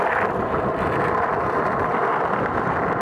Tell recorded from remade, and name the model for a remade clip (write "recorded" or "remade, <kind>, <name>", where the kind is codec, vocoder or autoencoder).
recorded